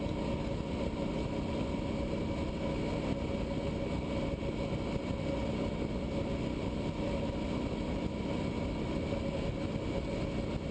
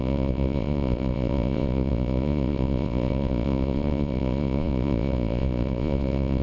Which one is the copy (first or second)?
second